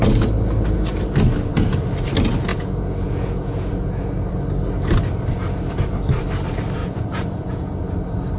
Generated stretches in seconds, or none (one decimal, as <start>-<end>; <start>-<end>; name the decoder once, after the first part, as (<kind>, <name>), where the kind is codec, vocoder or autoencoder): 2.5-4.3 (vocoder, Vocos); 6.8-7.9